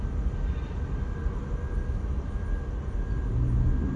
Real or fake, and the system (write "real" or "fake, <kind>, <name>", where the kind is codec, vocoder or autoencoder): real